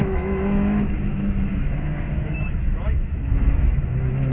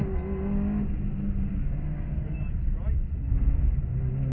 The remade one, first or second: first